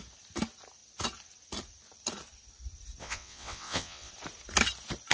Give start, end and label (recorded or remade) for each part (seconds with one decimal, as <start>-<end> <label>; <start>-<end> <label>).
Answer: 0.0-3.0 recorded; 3.0-4.1 remade; 4.1-5.1 recorded